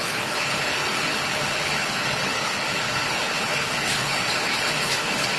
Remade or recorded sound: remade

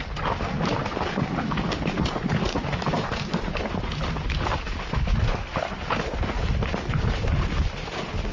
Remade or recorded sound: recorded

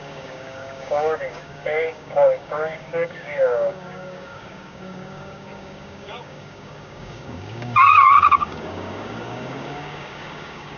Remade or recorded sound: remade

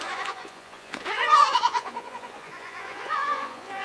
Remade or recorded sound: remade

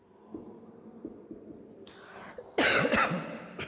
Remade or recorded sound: recorded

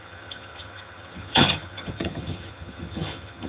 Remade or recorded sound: remade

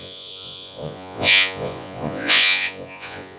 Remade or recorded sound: remade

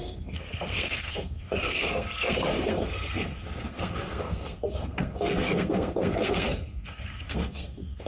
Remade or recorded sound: remade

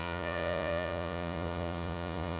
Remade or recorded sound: remade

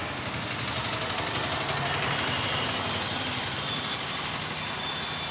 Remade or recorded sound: recorded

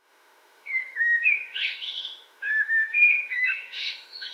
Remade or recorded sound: remade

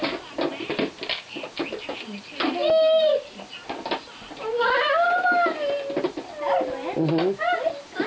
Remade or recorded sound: recorded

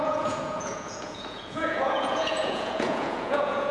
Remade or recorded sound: remade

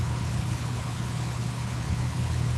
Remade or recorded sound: remade